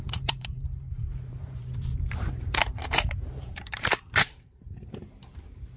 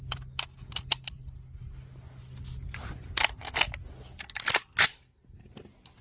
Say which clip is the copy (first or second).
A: first